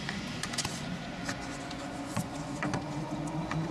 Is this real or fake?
fake